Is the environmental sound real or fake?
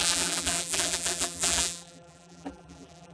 fake